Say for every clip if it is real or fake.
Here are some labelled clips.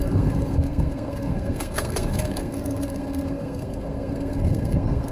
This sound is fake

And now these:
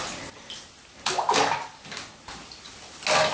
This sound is real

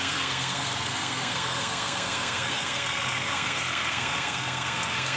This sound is fake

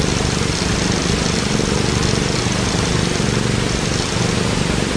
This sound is real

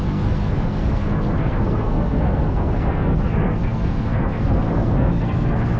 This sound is fake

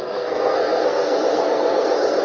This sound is fake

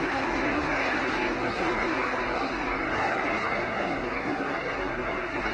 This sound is fake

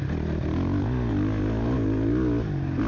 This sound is real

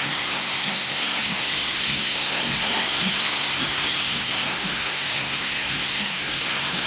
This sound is fake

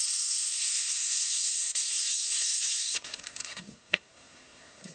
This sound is fake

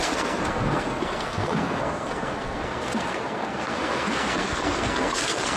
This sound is fake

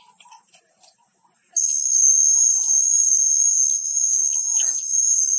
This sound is real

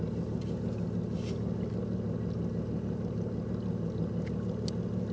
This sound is real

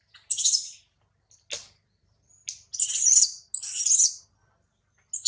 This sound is real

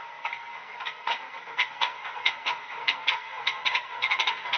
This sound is fake